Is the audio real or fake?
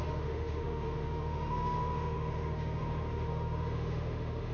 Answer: fake